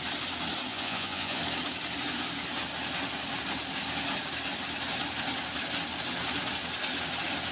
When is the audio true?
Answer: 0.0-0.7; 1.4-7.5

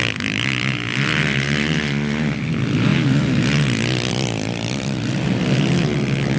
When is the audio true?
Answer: 0.9-2.4; 2.9-4.1

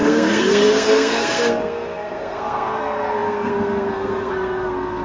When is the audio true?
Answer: none

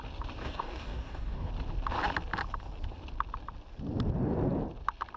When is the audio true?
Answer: 0.0-0.4; 1.5-5.2

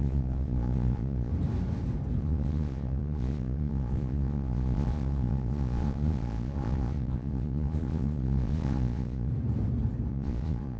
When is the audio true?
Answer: 1.3-2.2; 9.3-10.1

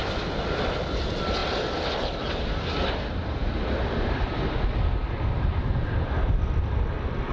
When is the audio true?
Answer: 0.0-7.3

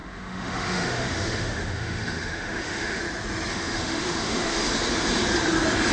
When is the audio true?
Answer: 3.0-3.5; 4.7-5.9